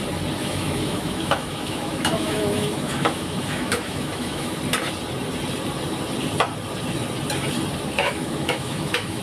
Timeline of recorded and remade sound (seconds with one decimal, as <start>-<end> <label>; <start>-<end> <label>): 0.0-0.4 recorded; 0.4-4.6 remade; 4.6-8.0 recorded; 8.0-9.2 remade